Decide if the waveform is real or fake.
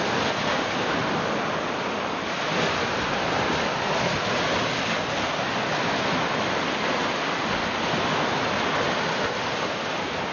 real